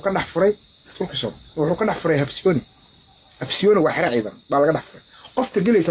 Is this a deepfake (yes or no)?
no